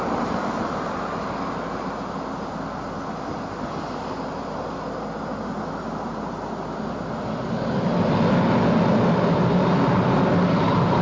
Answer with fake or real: real